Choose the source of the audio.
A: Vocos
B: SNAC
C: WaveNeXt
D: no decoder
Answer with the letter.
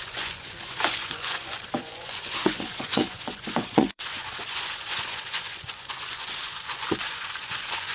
A